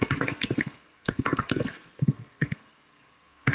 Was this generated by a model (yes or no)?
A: yes